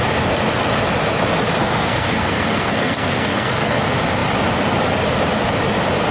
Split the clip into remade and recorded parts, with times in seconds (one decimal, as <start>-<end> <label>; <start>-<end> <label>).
0.0-1.6 recorded; 1.6-3.8 remade; 3.8-6.1 recorded